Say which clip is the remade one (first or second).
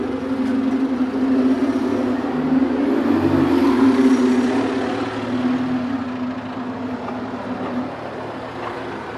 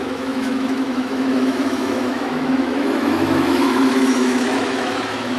second